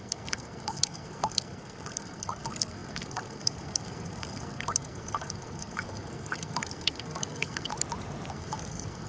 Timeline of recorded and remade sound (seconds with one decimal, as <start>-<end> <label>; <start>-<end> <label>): 0.0-7.7 remade; 7.7-8.3 recorded; 8.3-9.1 remade